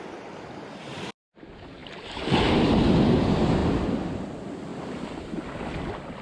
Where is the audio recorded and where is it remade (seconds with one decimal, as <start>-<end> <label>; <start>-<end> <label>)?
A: 0.0-6.2 recorded